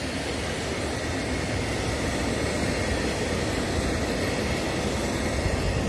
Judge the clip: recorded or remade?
recorded